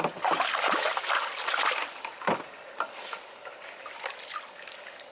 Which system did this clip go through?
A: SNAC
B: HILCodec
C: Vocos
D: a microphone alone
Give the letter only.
D